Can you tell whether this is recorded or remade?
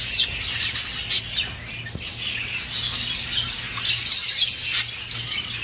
recorded